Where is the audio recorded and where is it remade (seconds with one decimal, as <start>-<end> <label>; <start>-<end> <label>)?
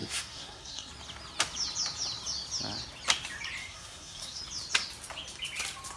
0.0-0.9 remade; 0.9-3.6 recorded; 3.6-4.4 remade; 4.4-6.0 recorded